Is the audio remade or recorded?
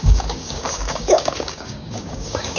remade